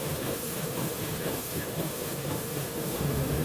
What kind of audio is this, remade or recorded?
remade